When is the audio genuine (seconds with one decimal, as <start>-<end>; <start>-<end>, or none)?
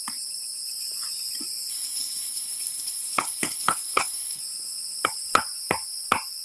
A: 0.0-1.7; 4.4-6.4